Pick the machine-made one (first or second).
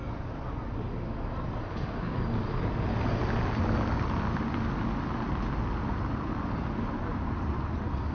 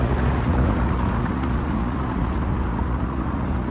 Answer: second